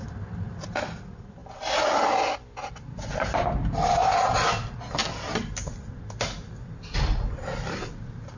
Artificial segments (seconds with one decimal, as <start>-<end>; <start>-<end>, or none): 0.0-1.4; 2.0-4.0; 5.8-8.4